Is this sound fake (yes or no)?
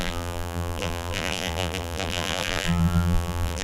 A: yes